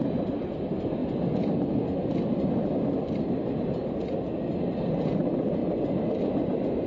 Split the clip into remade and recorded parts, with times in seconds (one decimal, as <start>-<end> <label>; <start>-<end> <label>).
0.0-6.9 recorded